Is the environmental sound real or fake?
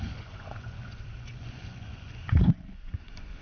fake